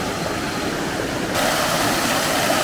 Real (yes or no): yes